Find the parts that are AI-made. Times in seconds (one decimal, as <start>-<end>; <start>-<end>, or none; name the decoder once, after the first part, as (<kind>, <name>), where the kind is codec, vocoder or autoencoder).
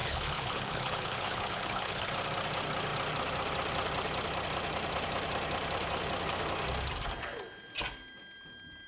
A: 0.0-2.1 (codec, HILCodec)